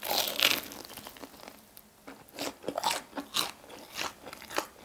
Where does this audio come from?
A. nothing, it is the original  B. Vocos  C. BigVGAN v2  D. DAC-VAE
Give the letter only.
A